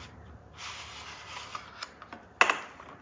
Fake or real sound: real